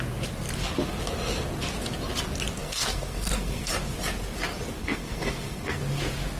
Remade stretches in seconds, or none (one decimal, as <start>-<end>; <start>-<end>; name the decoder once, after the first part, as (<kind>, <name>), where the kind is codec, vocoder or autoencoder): 2.6-3.7 (codec, SNAC); 4.8-5.8